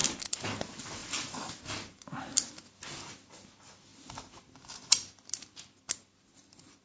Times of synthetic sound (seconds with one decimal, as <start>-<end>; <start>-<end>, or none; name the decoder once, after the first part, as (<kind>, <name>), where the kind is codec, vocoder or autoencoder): 1.0-1.6 (vocoder, BigVGAN v2); 3.9-4.7